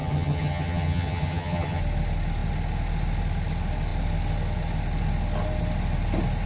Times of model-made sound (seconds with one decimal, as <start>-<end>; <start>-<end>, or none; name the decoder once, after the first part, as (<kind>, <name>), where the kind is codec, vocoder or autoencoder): 0.0-1.8 (vocoder, HiFi-GAN)